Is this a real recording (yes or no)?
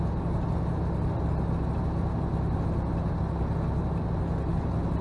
yes